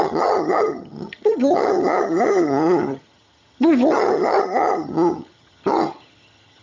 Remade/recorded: remade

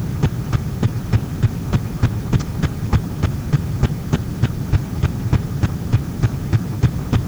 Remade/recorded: remade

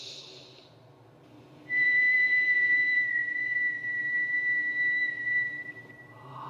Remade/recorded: recorded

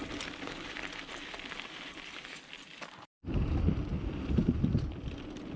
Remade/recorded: remade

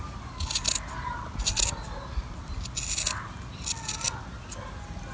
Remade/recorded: recorded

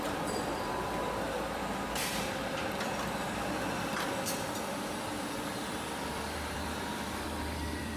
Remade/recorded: remade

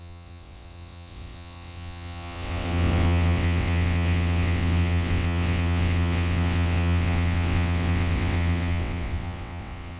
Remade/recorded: remade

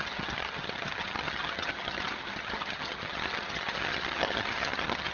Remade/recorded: remade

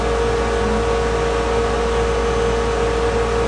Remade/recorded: recorded